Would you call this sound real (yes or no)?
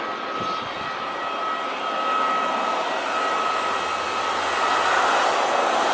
yes